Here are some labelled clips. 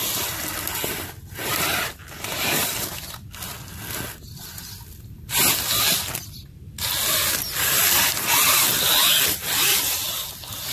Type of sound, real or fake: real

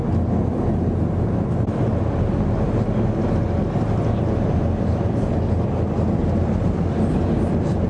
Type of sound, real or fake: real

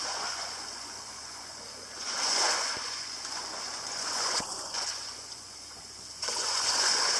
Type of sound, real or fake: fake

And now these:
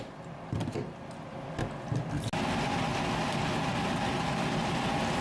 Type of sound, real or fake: real